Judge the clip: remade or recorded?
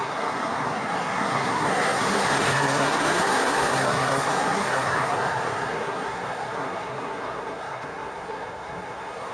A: remade